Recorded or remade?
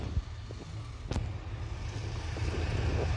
recorded